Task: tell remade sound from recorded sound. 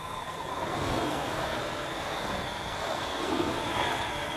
remade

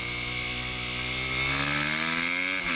recorded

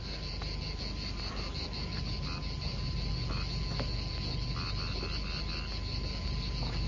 recorded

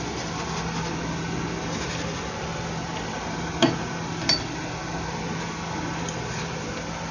recorded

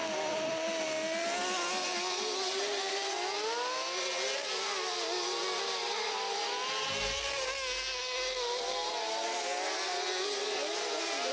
recorded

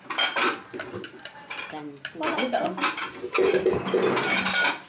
recorded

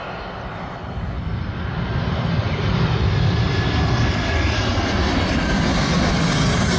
recorded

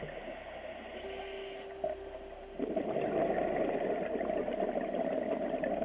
recorded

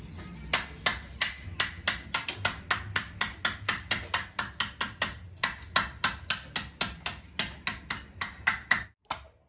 recorded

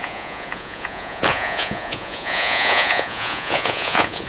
remade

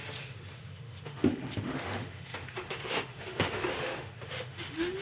remade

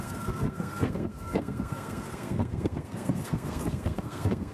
remade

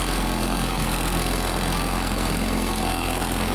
remade